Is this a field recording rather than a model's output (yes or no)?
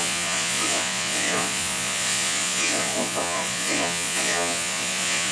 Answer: no